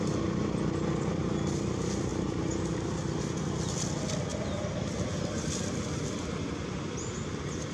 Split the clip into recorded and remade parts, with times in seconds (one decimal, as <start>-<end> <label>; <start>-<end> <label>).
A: 0.0-7.7 recorded